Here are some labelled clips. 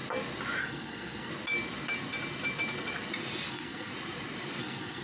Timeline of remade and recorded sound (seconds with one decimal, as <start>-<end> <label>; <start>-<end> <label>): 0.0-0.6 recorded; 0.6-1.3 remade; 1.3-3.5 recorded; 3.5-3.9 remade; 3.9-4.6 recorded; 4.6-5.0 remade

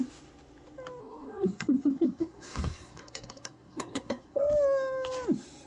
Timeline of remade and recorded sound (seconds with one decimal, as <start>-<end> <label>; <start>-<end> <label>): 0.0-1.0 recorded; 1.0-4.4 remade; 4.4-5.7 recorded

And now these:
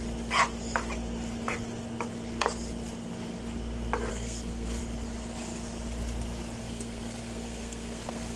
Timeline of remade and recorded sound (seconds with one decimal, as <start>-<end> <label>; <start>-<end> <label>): 0.0-4.1 recorded; 4.1-4.8 remade; 4.8-6.6 recorded; 6.6-8.4 remade

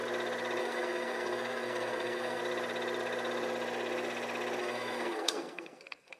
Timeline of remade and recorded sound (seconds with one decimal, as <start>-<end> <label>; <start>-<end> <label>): 0.0-0.6 recorded; 0.6-2.4 remade; 2.4-4.6 recorded; 4.6-6.2 remade